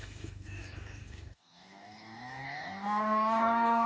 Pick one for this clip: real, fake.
fake